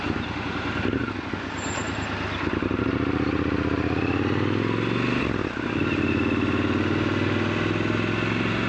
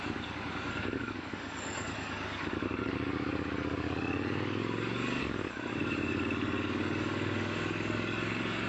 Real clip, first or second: first